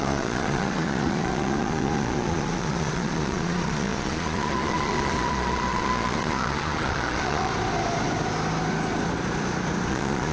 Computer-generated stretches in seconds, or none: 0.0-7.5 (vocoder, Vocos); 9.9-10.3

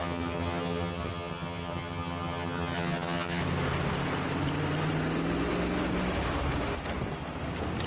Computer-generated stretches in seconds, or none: 0.0-3.4 (vocoder, HiFi-GAN)